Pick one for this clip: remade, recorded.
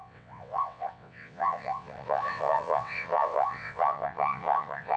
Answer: remade